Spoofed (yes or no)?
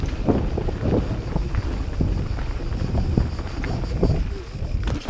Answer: no